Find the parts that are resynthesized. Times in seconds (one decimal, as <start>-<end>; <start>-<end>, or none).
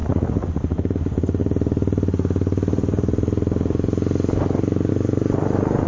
0.0-0.5